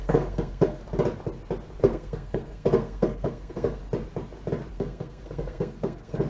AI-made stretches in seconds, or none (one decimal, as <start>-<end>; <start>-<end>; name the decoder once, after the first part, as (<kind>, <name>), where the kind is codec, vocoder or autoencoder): 0.0-0.8 (codec, SNAC); 1.8-3.8; 4.7-6.3